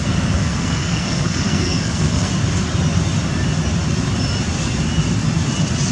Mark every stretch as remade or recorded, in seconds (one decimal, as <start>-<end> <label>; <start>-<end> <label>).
0.0-2.3 remade; 2.3-5.9 recorded